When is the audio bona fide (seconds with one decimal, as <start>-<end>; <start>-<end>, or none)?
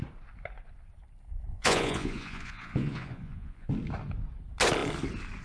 0.0-1.5; 3.7-5.4